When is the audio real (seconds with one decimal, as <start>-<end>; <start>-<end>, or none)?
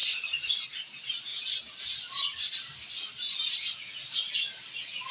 0.0-5.1